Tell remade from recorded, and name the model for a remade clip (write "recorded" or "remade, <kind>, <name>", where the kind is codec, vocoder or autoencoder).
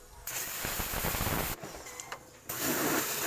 recorded